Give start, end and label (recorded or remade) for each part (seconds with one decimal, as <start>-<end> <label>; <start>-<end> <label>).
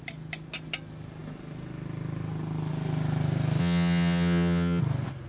0.0-3.6 recorded; 3.6-4.8 remade; 4.8-5.3 recorded